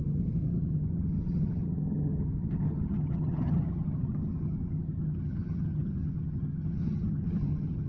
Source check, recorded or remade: remade